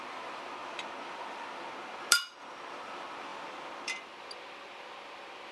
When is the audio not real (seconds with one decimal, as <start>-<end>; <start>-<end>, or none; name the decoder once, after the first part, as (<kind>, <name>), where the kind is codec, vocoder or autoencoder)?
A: 0.0-0.6 (vocoder, BigVGAN v2); 1.3-5.5